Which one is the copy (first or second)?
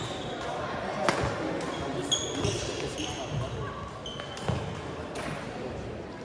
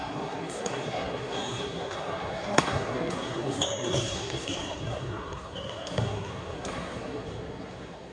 second